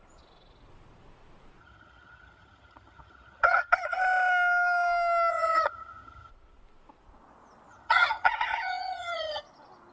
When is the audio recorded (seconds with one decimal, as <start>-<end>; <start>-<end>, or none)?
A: 0.0-1.6; 4.0-5.3; 6.3-7.7; 9.4-9.9